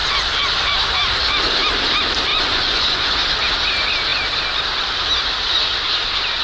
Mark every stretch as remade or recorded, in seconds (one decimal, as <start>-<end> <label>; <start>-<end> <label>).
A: 0.0-2.3 recorded; 2.3-3.1 remade; 3.1-6.4 recorded